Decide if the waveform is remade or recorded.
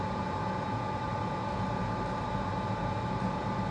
recorded